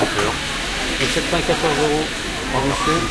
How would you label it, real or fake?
real